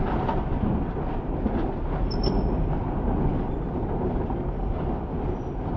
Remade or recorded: recorded